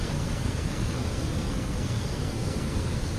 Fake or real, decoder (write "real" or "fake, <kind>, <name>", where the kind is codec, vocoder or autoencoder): fake, codec, SNAC